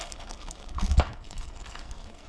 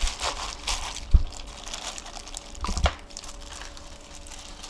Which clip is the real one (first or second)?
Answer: second